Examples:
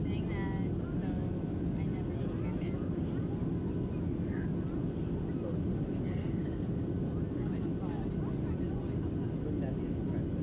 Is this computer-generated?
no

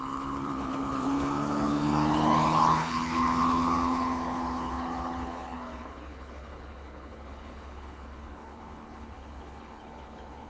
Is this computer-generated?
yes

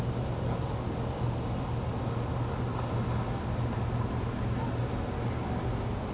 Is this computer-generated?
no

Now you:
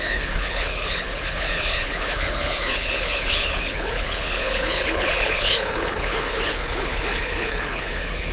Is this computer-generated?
yes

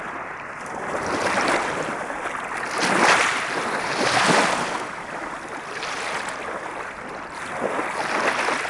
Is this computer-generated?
no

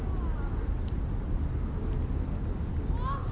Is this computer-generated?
no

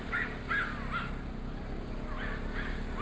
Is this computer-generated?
no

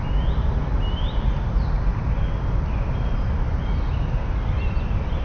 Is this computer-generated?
no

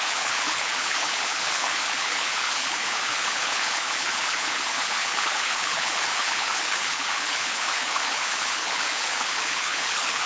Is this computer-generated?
yes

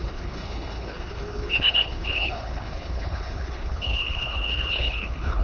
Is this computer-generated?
yes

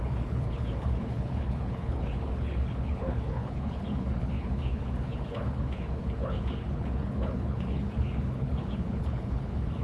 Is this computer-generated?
yes